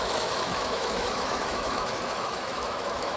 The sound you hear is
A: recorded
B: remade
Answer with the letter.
B